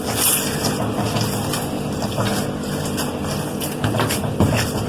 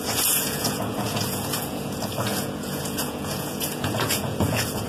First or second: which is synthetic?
second